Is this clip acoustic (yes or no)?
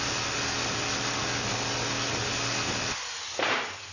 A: yes